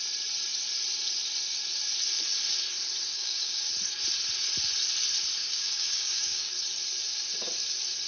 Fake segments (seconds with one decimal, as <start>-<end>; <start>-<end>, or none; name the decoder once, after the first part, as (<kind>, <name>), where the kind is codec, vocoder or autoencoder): 3.1-3.7 (codec, DAC); 5.4-6.5